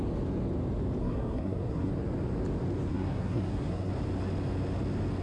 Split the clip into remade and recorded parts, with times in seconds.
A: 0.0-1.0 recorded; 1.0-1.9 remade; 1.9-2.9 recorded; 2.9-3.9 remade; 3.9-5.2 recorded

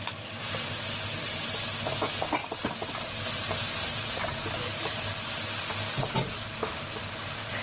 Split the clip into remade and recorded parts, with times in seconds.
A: 0.0-2.4 recorded; 2.4-6.3 remade; 6.3-7.6 recorded